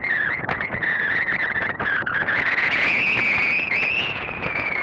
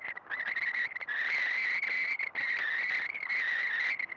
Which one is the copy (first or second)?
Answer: first